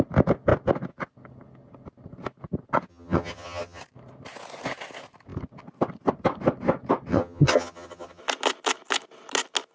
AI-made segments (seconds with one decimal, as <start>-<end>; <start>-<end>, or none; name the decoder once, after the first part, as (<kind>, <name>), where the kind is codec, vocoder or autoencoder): 2.9-3.8 (vocoder, HiFi-GAN); 7.1-8.2